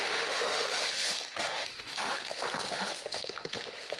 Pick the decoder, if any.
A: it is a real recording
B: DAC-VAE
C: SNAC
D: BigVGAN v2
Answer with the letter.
B